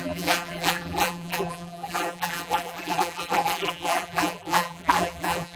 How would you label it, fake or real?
fake